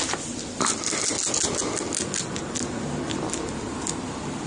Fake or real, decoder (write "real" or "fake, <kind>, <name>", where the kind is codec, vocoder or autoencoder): real